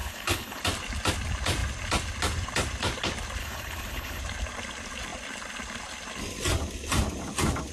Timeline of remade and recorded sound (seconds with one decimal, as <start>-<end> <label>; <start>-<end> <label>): 0.0-0.6 remade; 0.6-3.4 recorded; 3.4-4.2 remade; 4.2-7.7 recorded